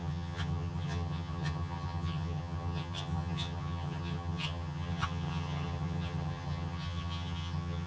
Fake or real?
fake